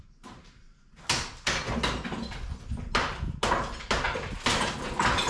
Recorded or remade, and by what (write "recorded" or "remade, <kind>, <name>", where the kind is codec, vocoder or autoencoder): recorded